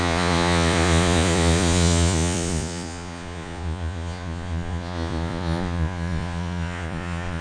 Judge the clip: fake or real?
fake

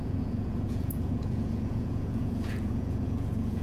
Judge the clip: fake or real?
fake